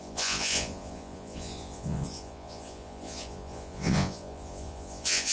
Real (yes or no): no